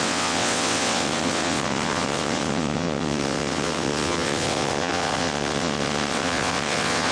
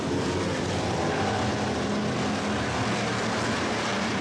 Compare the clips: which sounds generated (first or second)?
first